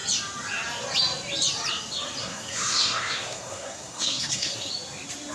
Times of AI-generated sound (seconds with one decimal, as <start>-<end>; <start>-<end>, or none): 2.2-4.7